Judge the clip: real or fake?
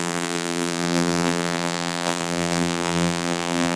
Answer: fake